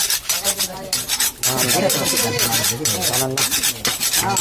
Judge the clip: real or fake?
real